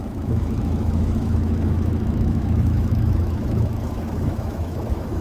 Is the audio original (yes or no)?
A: no